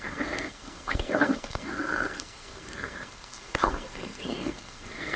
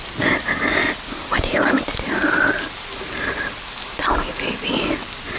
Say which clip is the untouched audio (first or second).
second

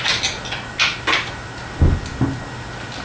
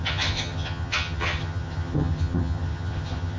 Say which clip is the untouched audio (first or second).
first